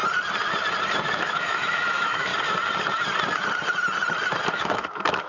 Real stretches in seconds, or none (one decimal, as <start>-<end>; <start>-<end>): 0.0-1.1; 2.3-4.5